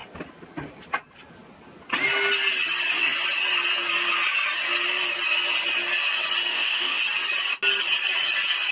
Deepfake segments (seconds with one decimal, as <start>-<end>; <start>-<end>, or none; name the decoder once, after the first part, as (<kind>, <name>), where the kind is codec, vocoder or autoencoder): 6.5-7.0 (autoencoder, DAC-VAE)